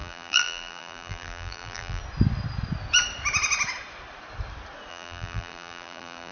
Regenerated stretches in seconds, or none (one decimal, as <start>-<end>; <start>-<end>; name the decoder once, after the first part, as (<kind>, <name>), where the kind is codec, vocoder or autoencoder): 0.0-2.0 (vocoder, BigVGAN v2); 4.9-6.3